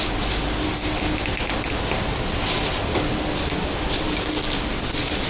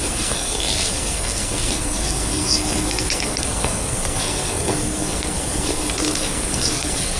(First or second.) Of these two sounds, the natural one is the first